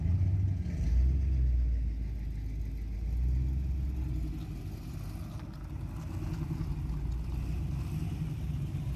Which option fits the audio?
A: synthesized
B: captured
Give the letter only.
B